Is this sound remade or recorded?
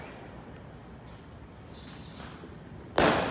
recorded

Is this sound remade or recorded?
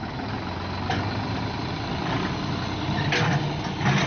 recorded